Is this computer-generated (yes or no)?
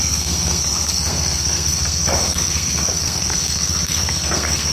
yes